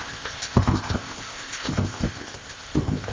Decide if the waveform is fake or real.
fake